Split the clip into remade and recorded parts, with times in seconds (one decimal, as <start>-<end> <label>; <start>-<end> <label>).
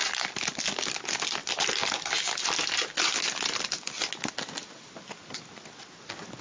0.0-6.4 recorded